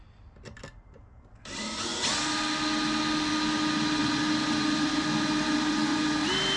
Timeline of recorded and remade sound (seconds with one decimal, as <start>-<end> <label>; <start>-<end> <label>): 0.0-6.6 recorded